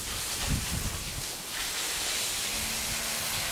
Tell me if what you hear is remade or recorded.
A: recorded